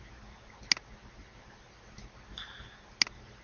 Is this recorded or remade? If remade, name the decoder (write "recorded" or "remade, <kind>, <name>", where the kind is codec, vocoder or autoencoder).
recorded